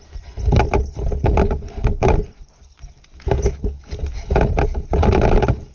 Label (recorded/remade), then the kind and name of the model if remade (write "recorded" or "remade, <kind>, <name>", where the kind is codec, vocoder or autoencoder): recorded